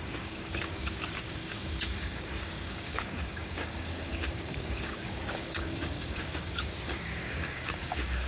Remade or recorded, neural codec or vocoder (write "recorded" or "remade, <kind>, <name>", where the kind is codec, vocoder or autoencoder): remade, codec, DAC